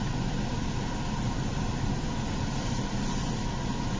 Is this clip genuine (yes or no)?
yes